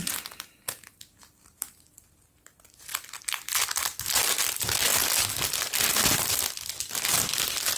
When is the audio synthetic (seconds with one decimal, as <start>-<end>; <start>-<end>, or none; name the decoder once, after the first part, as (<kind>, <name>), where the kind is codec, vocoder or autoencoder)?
none